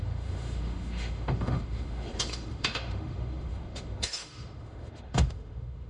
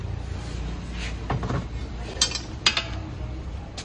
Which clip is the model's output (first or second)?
first